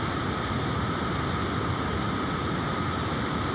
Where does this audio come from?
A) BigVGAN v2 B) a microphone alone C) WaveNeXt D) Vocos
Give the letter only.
B